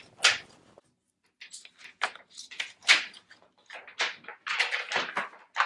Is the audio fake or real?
real